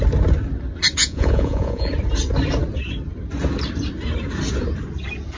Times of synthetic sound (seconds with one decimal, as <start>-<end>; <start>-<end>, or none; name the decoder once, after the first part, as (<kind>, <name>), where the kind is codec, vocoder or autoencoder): 1.0-1.9 (vocoder, Vocos)